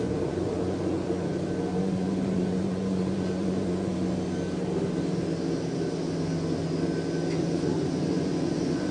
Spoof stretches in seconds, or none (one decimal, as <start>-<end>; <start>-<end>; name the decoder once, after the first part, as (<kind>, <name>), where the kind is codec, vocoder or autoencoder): 0.0-1.3 (vocoder, Vocos); 1.8-3.9; 7.4-8.9